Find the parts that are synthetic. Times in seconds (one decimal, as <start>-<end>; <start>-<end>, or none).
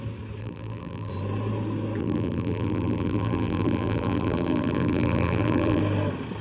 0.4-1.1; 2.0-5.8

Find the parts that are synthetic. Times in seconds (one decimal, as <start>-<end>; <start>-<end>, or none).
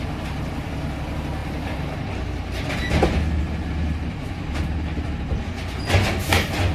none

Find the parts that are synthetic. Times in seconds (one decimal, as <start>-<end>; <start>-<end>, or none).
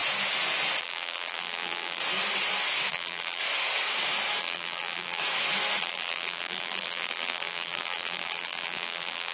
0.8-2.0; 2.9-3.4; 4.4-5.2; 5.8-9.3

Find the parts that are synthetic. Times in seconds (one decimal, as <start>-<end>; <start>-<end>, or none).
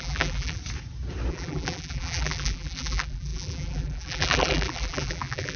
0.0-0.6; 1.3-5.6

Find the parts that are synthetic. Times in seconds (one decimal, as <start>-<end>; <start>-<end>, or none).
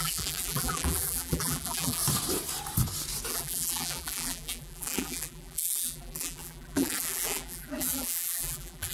0.0-2.0; 3.3-8.9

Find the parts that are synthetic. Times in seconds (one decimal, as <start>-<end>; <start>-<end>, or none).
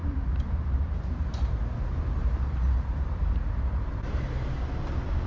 0.0-1.6; 2.2-4.6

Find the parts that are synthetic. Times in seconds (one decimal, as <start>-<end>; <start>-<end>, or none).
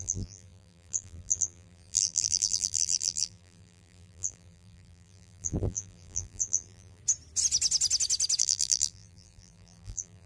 0.0-7.0; 8.4-10.3